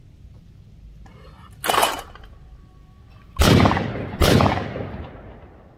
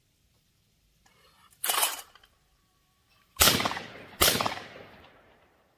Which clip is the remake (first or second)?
second